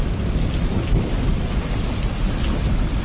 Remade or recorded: recorded